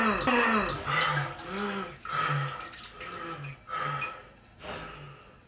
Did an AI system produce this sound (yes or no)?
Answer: no